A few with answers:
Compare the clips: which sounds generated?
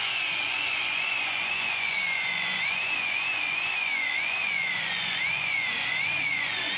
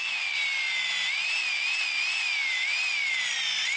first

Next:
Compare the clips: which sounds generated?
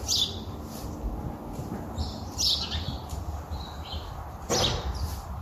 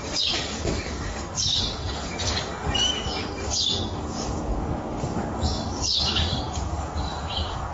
second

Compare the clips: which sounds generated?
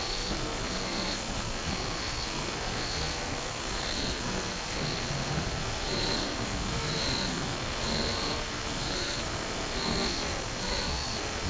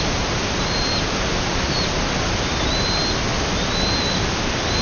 first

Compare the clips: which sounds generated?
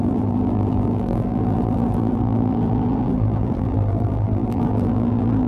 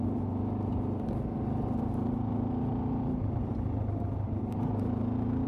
first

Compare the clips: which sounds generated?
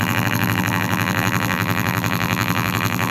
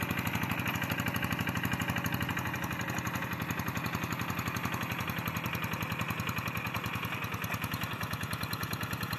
first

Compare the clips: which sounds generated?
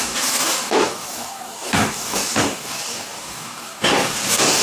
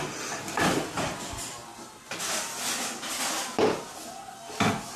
first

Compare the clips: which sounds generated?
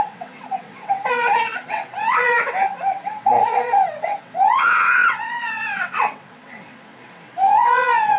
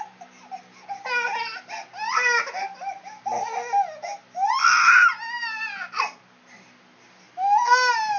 first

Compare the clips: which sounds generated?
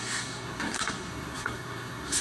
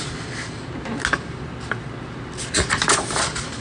first